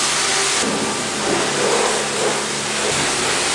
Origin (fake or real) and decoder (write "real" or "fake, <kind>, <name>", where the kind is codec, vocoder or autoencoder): real